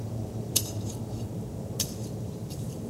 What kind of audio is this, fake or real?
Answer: fake